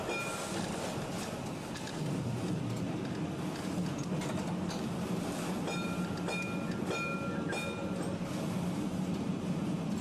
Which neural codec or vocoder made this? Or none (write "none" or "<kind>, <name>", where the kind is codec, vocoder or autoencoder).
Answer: none